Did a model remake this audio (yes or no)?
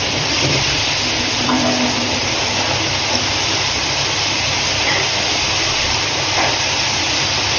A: yes